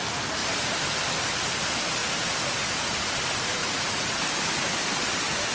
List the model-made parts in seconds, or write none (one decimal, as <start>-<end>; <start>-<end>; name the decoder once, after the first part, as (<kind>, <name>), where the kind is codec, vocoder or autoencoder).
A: 3.6-4.2 (vocoder, Vocos)